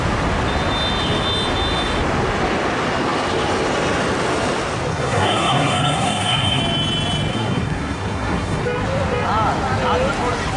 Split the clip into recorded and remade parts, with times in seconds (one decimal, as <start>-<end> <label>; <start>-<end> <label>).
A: 0.0-4.9 recorded; 4.9-6.6 remade; 6.6-7.3 recorded; 7.3-8.6 remade; 8.6-10.6 recorded